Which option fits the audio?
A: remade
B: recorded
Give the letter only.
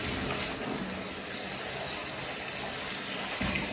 B